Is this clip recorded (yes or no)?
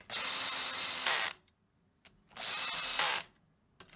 yes